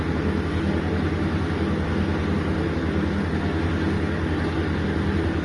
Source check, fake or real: real